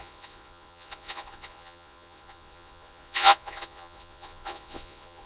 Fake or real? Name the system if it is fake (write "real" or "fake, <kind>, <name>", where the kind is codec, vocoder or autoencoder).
fake, vocoder, Vocos